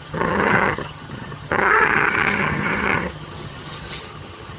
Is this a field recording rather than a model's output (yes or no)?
no